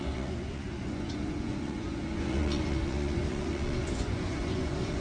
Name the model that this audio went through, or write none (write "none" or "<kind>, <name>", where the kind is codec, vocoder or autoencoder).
vocoder, Vocos